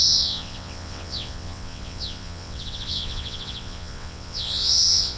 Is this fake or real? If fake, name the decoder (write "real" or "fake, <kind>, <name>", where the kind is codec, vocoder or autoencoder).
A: fake, vocoder, WaveNeXt